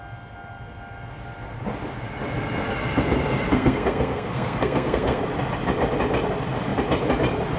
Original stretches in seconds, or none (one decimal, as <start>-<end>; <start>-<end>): 0.0-3.5; 5.2-7.6